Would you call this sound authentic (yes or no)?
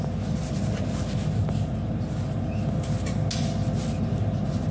yes